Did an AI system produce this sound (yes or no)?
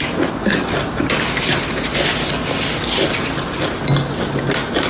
no